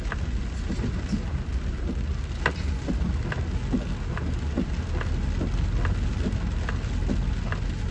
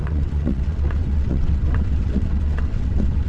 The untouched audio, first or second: first